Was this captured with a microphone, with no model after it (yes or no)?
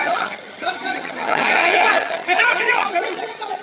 no